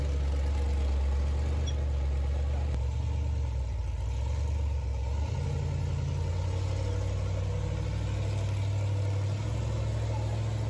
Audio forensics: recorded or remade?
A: recorded